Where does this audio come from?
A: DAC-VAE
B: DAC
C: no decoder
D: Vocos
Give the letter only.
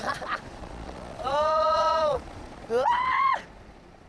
D